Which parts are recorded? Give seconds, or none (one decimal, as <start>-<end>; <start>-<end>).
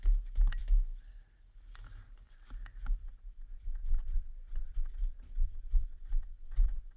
0.0-3.0